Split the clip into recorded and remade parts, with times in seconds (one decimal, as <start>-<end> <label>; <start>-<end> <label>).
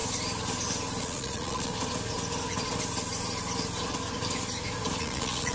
0.0-1.0 recorded; 1.0-1.7 remade; 1.7-5.0 recorded; 5.0-5.5 remade